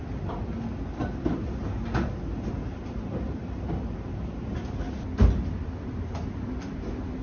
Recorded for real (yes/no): yes